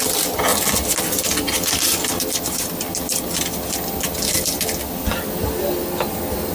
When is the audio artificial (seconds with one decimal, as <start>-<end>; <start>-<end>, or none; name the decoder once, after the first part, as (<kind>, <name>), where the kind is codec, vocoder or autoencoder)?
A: none

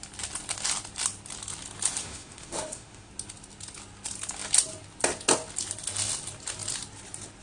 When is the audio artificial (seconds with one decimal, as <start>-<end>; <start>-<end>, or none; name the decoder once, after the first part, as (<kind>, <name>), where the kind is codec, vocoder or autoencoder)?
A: 2.0-3.1 (autoencoder, DAC-VAE)

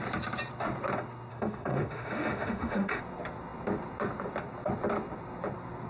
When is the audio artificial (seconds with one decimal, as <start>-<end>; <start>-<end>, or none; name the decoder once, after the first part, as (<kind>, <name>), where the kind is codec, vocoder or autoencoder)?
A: 1.3-3.0 (autoencoder, DAC-VAE)

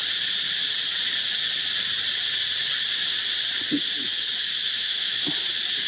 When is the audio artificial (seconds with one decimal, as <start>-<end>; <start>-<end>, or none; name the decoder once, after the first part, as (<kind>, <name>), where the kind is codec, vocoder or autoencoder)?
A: 4.7-5.2 (autoencoder, DAC-VAE)

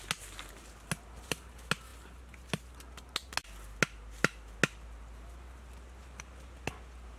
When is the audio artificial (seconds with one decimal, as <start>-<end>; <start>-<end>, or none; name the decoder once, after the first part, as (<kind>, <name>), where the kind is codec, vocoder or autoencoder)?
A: none

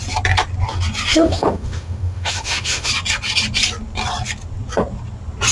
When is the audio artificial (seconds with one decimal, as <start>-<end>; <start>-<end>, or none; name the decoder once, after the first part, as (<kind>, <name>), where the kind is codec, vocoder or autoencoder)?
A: 1.1-2.9 (autoencoder, DAC-VAE)

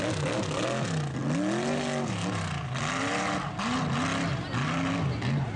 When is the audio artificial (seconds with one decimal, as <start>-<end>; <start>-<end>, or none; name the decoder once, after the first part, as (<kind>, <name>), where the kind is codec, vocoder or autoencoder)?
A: none